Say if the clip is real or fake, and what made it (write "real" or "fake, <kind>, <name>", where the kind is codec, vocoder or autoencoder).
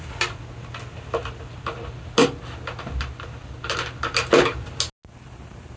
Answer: real